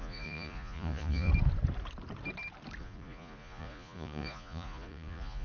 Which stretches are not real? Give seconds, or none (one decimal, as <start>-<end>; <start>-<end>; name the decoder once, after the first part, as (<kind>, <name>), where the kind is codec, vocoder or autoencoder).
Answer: 0.0-1.3 (vocoder, Vocos); 2.8-5.4